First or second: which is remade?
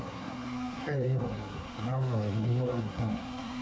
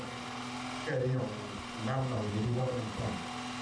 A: first